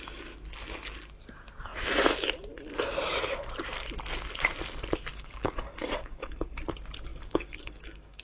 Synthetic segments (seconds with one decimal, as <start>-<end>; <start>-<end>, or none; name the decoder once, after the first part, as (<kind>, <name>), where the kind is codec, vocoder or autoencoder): 5.1-6.6 (codec, DAC); 7.1-8.2